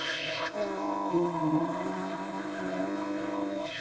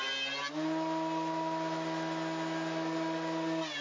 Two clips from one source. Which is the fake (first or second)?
first